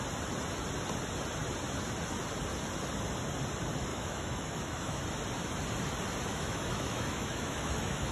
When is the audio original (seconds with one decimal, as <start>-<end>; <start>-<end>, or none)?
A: 0.0-3.9; 5.0-6.3